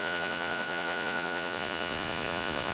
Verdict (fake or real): fake